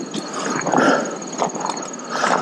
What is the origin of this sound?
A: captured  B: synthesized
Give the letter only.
B